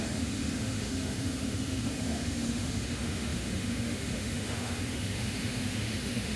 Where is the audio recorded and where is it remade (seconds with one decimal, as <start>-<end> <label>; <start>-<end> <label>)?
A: 0.0-6.4 remade